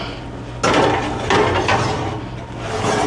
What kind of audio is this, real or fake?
real